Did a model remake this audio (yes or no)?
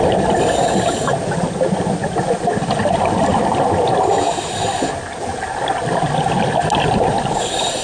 no